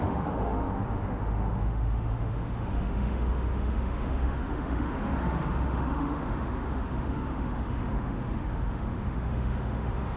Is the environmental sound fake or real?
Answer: fake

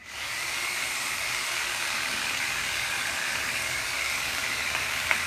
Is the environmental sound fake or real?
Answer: fake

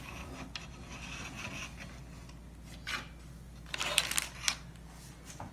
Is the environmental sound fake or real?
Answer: real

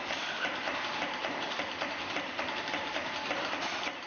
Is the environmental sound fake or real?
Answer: fake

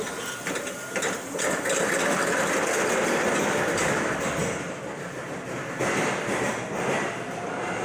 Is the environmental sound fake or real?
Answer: real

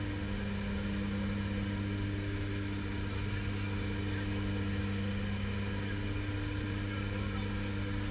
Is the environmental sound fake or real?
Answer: real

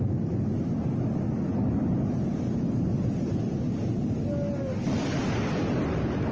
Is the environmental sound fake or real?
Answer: real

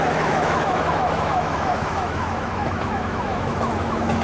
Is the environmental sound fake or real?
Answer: fake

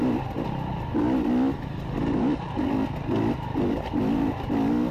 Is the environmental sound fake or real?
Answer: real